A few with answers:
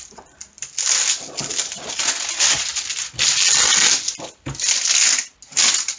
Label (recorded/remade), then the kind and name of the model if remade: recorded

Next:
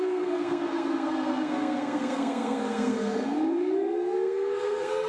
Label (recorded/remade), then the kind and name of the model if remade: remade, codec, SNAC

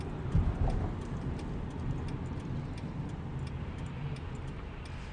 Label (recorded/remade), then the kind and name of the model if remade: recorded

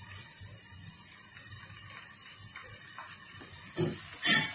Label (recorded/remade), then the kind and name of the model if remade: recorded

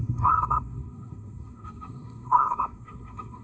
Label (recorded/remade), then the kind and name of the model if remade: remade, codec, SNAC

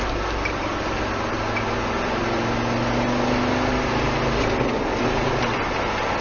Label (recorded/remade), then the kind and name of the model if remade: recorded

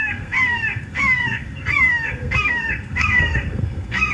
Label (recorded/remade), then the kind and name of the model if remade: remade, codec, SNAC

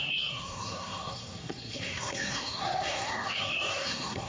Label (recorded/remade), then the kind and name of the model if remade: remade, codec, SNAC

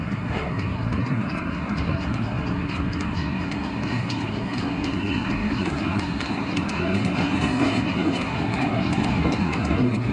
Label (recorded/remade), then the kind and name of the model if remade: remade, codec, SNAC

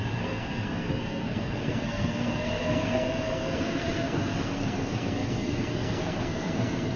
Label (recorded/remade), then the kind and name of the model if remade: remade, codec, SNAC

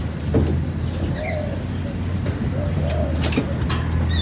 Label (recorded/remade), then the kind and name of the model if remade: recorded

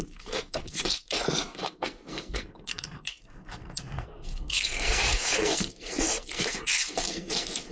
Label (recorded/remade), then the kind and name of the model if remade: remade, codec, SNAC